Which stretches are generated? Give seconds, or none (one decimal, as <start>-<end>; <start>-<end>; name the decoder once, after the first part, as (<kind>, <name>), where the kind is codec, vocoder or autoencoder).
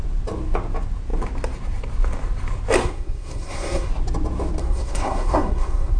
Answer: 2.8-3.9 (codec, SNAC); 4.6-6.0